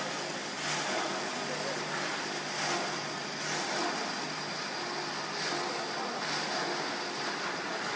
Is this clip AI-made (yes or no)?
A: no